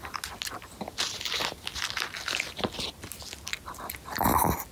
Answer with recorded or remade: recorded